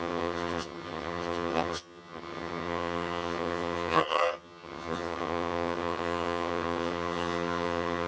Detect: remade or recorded remade